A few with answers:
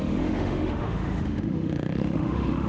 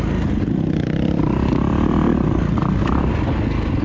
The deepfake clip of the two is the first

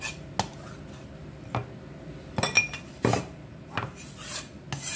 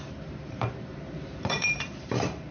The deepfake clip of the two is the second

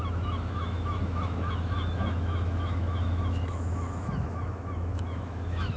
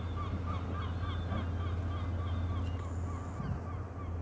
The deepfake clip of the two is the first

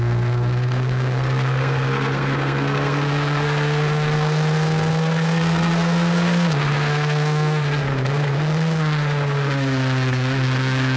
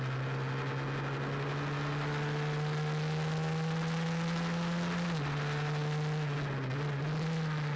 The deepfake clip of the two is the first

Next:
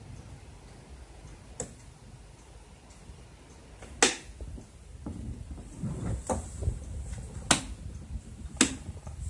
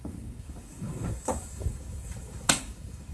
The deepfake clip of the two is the second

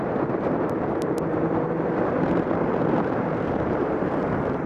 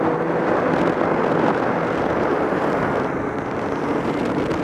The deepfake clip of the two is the first